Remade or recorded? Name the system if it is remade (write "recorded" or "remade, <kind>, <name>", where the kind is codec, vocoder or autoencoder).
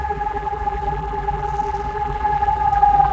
remade, vocoder, BigVGAN v2